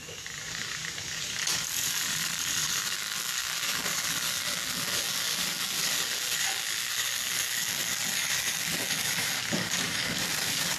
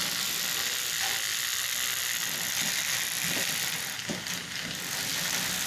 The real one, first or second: second